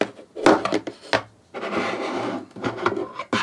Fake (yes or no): no